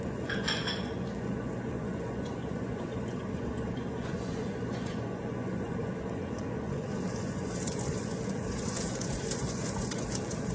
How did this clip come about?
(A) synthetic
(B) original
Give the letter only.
A